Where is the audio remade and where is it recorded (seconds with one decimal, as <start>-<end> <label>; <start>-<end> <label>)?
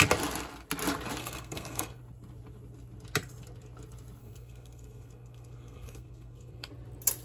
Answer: 0.0-1.2 recorded; 1.2-2.0 remade; 2.0-4.2 recorded; 4.2-6.7 remade; 6.7-7.2 recorded